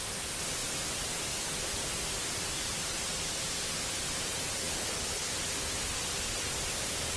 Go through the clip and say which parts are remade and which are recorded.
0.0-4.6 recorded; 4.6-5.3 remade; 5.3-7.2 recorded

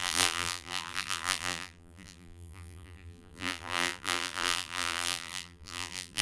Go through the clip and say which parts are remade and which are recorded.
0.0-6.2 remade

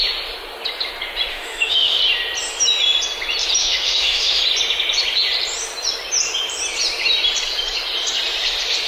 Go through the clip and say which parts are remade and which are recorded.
0.0-1.3 recorded; 1.3-2.0 remade; 2.0-3.6 recorded; 3.6-4.4 remade; 4.4-8.9 recorded

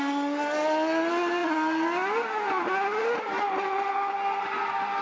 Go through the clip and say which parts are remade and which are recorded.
0.0-5.0 recorded

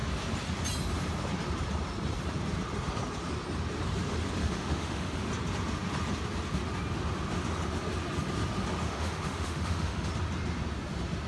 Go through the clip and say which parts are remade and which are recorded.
0.0-4.4 recorded; 4.4-5.3 remade; 5.3-8.8 recorded; 8.8-10.1 remade; 10.1-11.3 recorded

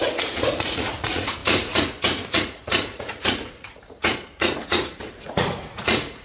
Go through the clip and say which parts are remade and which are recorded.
0.0-6.2 remade